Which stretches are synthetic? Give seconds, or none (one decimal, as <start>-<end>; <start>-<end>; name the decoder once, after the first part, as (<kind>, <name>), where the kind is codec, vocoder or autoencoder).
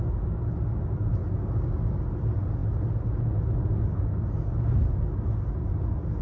none